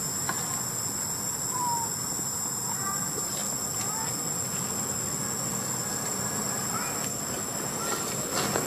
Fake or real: real